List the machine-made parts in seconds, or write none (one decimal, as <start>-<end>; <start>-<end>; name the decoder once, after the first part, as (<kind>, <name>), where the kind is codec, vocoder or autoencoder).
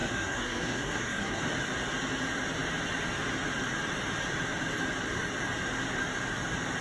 0.0-1.4 (codec, SNAC)